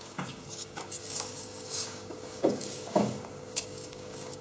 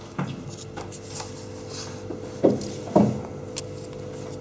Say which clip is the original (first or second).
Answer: second